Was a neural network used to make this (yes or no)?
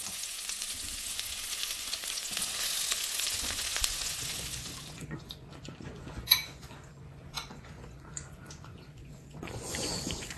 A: yes